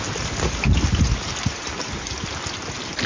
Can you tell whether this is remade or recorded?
recorded